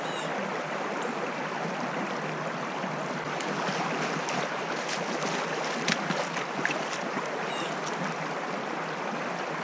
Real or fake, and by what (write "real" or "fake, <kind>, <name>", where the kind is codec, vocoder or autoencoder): real